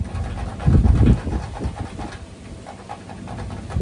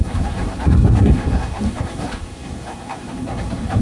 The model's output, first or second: second